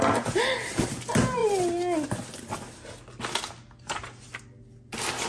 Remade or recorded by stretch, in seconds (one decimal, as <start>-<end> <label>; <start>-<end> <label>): 0.0-5.3 recorded